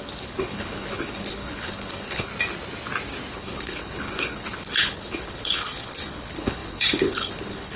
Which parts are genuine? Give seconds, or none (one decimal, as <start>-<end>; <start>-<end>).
2.3-3.3